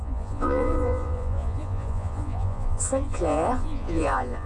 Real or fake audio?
fake